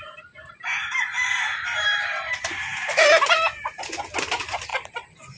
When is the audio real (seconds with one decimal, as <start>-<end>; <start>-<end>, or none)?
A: 0.0-4.7